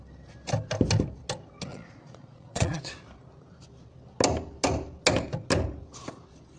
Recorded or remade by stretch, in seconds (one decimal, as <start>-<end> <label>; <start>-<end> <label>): 0.0-1.7 recorded; 1.7-2.9 remade; 2.9-6.6 recorded